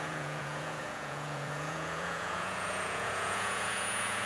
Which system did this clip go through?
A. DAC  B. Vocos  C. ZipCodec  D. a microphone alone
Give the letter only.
B